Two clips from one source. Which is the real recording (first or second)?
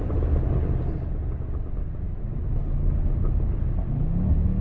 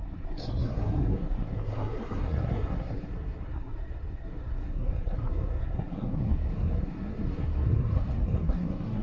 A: first